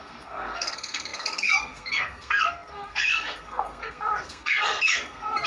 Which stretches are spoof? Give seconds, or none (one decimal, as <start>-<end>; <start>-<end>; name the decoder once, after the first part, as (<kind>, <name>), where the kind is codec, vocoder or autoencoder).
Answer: 0.0-5.5 (codec, SNAC)